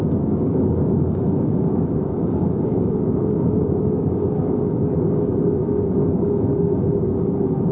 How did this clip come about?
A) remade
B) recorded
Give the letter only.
A